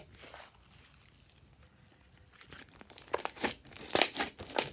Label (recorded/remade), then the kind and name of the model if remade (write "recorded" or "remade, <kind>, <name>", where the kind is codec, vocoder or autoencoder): recorded